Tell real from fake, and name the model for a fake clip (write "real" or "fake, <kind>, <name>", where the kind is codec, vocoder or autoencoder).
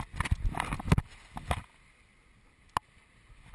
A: real